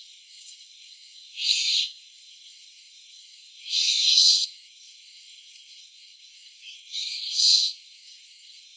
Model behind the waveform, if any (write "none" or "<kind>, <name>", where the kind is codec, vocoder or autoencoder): codec, SNAC